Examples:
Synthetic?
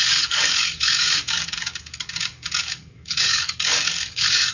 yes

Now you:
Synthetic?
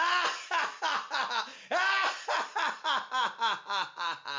no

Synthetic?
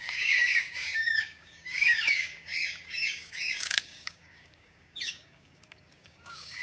yes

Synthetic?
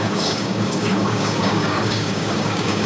yes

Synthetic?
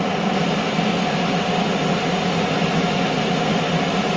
no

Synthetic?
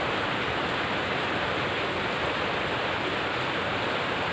no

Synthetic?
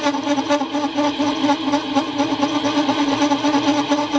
no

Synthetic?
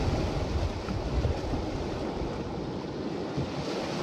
no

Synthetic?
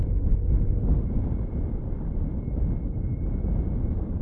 no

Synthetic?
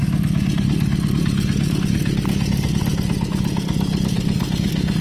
no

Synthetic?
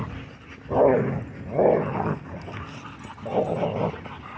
no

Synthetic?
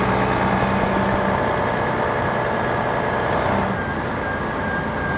no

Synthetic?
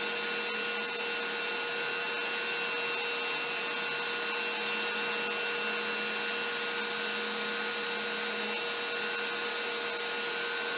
no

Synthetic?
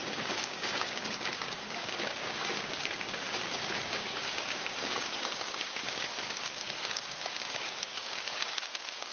yes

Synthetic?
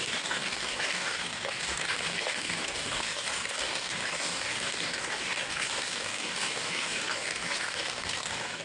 yes